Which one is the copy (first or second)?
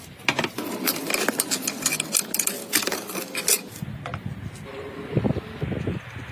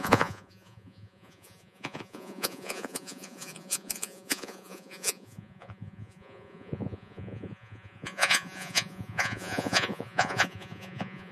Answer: second